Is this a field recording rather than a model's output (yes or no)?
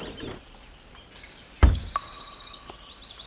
yes